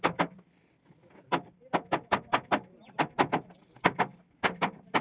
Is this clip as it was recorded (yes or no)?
yes